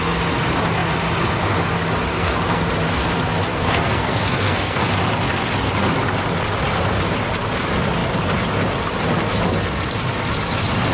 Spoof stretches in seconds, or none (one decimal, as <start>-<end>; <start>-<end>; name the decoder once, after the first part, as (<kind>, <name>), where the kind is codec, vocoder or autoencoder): 2.1-2.7 (codec, SNAC); 3.5-4.9